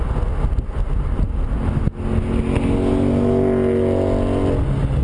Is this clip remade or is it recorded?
recorded